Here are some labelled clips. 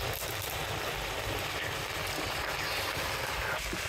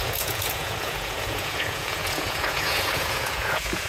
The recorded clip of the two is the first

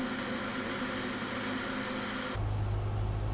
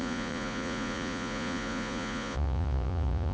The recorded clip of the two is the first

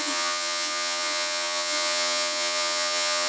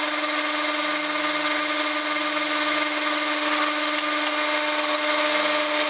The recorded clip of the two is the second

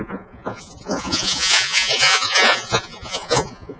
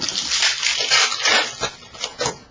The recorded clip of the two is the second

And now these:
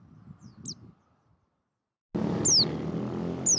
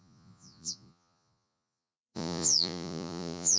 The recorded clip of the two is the first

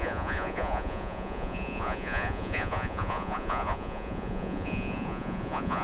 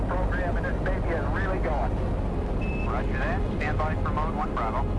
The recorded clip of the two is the second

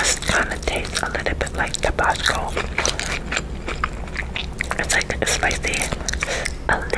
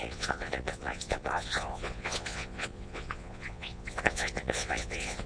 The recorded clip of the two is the first